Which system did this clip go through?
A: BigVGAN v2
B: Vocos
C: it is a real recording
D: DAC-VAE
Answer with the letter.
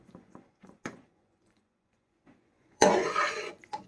B